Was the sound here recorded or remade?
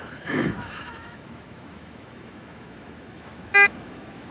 remade